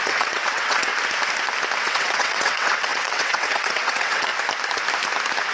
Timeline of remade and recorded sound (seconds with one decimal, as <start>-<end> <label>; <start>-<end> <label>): 0.0-0.9 remade; 0.9-1.8 recorded; 1.8-4.3 remade; 4.3-5.5 recorded